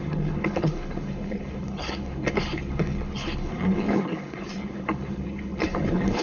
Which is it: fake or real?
fake